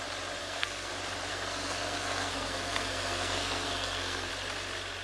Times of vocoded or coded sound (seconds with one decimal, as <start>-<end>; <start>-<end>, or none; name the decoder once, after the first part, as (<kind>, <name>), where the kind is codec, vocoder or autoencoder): 0.4-0.9 (codec, SNAC); 1.3-4.3